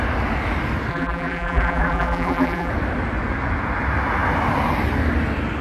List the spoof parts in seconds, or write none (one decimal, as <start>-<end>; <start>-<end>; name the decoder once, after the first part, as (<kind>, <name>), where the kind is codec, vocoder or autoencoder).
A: 0.9-2.7 (vocoder, BigVGAN v2)